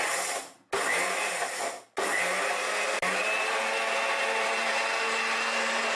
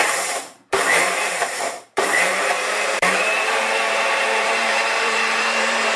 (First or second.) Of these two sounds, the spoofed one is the second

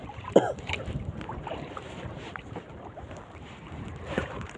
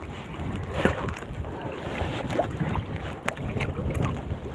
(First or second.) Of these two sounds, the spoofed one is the first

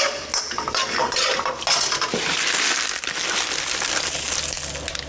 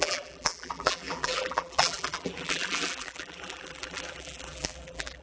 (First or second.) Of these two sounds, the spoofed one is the second